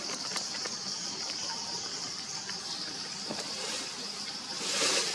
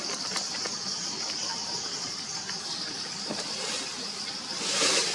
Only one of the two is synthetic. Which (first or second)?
first